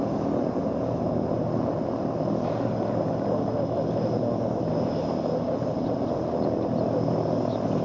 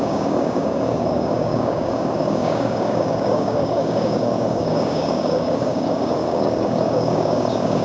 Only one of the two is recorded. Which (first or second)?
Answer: first